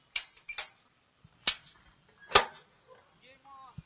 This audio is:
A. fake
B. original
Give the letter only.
B